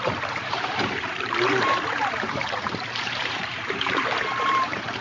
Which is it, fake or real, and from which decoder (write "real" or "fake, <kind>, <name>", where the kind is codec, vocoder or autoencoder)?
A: fake, vocoder, BigVGAN v2